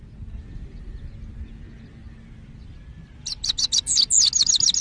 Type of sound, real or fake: real